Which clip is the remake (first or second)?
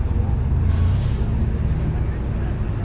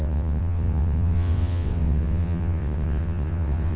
second